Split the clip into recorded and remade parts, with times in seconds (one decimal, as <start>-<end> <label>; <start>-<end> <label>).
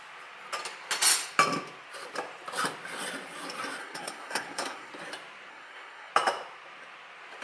0.0-3.8 recorded; 3.8-4.9 remade; 4.9-5.5 recorded; 5.5-6.1 remade; 6.1-7.4 recorded